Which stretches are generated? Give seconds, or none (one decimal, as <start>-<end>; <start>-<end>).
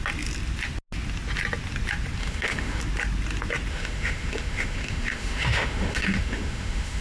2.2-2.8; 3.7-7.0